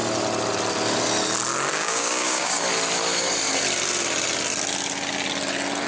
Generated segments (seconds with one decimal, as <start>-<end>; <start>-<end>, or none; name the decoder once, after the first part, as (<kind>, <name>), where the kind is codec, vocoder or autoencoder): 1.7-2.6 (codec, DAC)